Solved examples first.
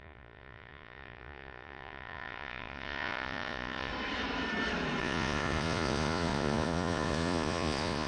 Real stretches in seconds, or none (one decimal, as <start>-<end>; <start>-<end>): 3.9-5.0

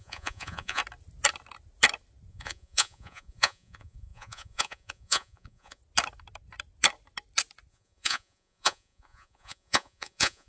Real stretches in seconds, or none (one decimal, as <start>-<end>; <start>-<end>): 0.8-2.3; 5.8-7.7

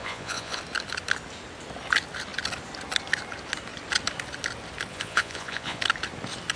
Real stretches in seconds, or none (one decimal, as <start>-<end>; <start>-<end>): 0.6-4.9; 5.8-6.6

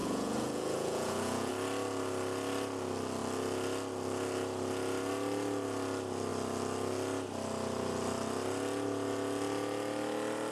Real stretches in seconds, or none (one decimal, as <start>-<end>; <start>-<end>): 1.5-10.5

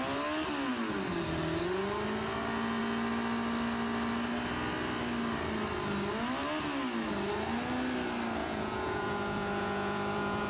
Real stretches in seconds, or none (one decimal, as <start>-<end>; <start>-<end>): 0.0-8.4

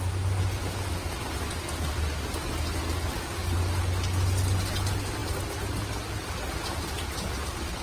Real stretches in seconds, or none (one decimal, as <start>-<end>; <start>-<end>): 0.0-7.8